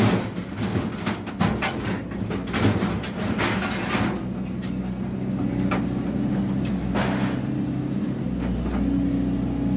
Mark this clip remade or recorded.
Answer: recorded